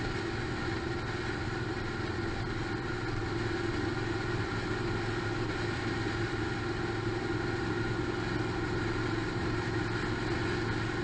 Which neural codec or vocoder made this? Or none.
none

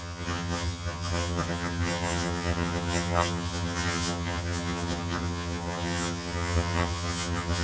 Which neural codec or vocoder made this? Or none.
vocoder, HiFi-GAN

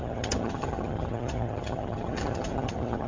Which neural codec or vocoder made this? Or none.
vocoder, HiFi-GAN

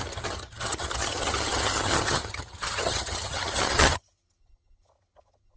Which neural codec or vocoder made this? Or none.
vocoder, HiFi-GAN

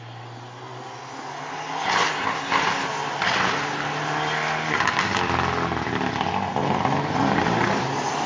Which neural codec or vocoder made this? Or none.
none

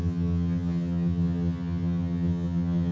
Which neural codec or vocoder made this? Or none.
vocoder, HiFi-GAN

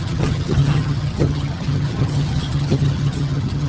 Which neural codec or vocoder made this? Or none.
vocoder, HiFi-GAN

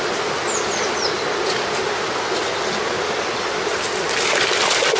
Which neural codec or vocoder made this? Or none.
none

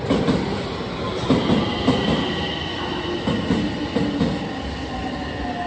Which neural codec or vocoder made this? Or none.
none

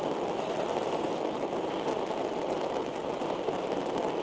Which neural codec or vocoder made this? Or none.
none